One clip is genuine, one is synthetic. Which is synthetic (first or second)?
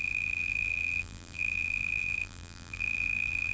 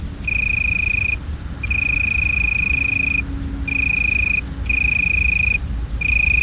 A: first